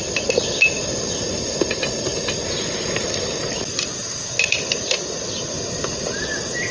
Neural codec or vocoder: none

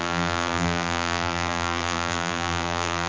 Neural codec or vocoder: vocoder, BigVGAN v2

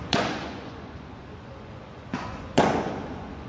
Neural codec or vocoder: vocoder, Vocos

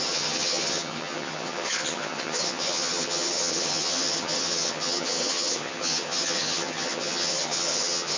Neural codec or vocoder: vocoder, HiFi-GAN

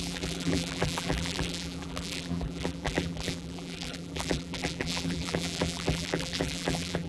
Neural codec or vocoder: vocoder, BigVGAN v2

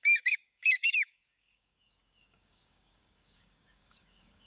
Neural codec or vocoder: codec, DAC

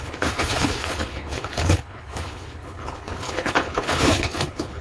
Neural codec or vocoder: codec, HILCodec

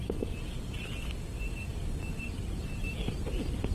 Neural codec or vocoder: none